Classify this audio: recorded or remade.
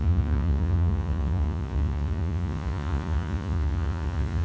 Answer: remade